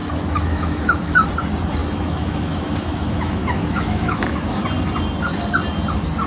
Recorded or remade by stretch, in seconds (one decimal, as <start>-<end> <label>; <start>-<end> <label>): 0.0-1.3 remade; 1.3-1.8 recorded; 1.8-4.6 remade; 4.6-6.3 recorded